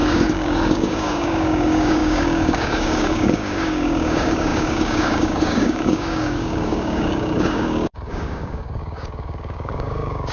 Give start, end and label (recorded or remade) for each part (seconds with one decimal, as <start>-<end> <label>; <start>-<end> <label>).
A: 0.0-10.3 remade